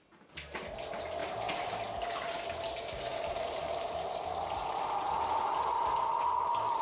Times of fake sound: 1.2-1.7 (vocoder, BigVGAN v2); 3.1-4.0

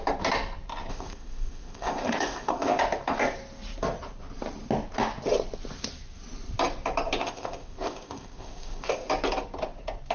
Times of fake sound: 0.9-2.8 (codec, ZipCodec); 7.2-9.1

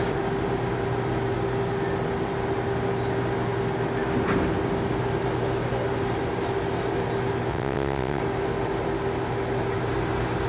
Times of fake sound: 7.5-8.2 (vocoder, WaveNeXt)

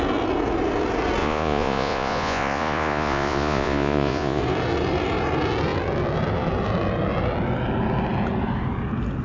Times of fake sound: 1.2-4.4 (vocoder, Vocos)

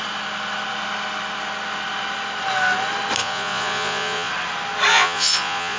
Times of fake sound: 3.2-4.3 (vocoder, Vocos); 4.9-5.8

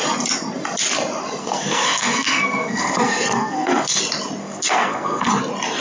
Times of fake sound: 1.4-4.0 (codec, SNAC); 4.4-5.3